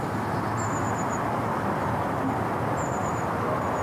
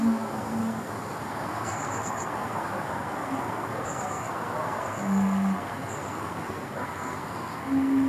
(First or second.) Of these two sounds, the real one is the first